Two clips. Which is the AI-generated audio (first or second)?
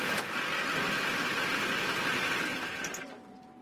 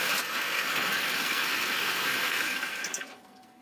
second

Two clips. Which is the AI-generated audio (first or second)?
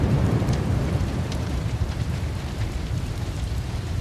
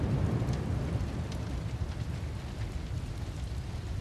first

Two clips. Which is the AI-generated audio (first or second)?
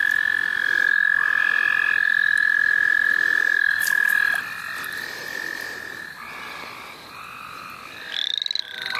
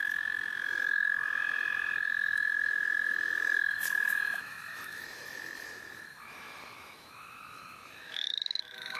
second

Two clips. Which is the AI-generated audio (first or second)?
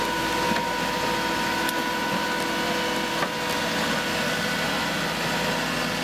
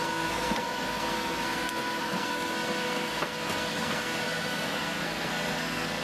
second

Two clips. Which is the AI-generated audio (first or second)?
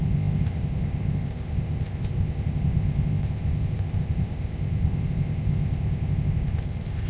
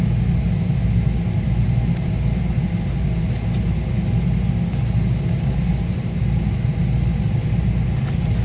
first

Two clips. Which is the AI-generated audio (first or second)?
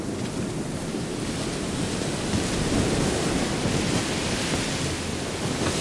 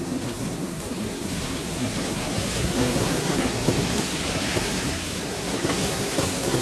second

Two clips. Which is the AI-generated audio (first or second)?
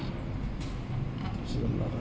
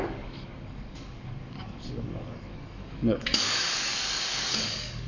second